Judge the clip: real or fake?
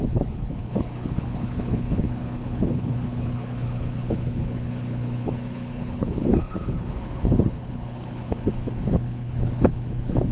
fake